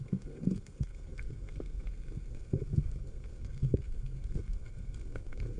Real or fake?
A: fake